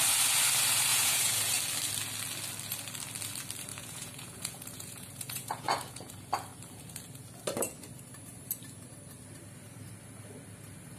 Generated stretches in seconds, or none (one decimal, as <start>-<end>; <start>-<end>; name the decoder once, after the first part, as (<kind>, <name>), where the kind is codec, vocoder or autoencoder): 0.9-1.6 (vocoder, Vocos); 3.7-6.1